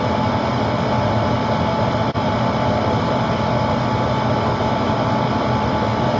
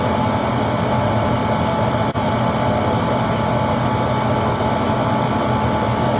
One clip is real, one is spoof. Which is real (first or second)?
second